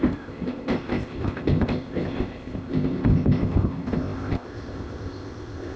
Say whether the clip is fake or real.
fake